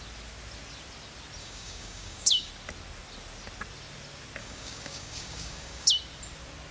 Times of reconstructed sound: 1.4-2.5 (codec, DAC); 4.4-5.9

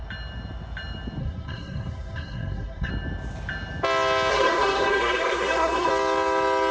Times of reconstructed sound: 1.2-2.9 (codec, SNAC); 4.3-5.9

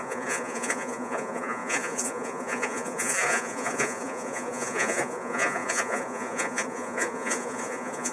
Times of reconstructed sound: 0.0-8.1 (vocoder, Vocos)

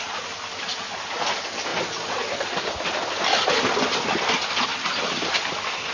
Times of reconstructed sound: none

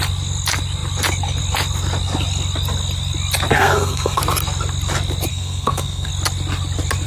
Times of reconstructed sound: 3.5-4.2 (codec, SNAC); 5.3-6.1

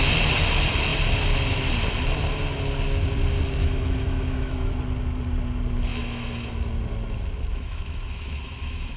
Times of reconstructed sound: 3.6-4.7 (autoencoder, DAC-VAE); 5.9-6.5; 7.5-9.0

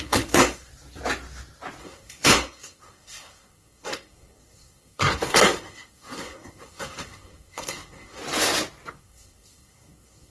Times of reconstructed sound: 0.0-0.7 (codec, SNAC); 1.8-8.2; 8.9-10.3

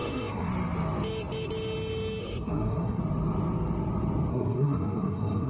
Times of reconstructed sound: 0.0-0.5 (codec, SNAC); 2.2-3.0; 4.3-5.5